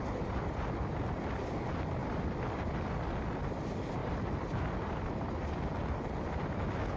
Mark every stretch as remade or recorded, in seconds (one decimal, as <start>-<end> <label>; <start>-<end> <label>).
0.0-2.0 recorded; 2.0-3.4 remade; 3.4-4.0 recorded; 4.0-5.3 remade; 5.3-7.0 recorded